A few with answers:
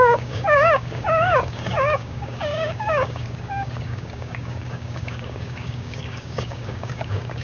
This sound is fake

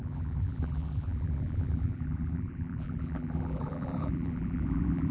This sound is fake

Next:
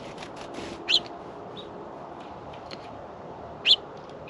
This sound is fake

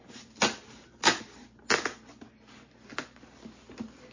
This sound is real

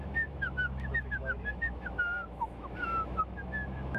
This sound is fake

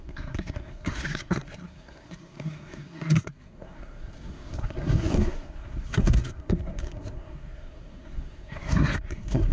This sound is fake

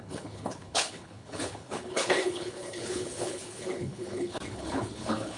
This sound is fake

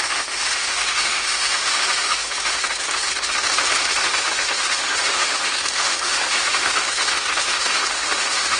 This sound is fake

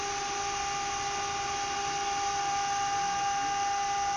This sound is real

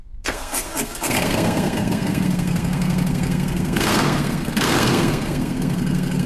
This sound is fake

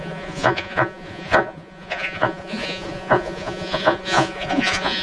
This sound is fake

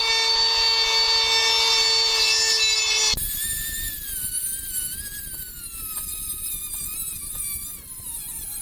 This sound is real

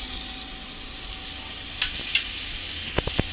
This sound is real